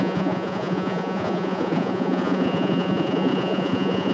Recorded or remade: remade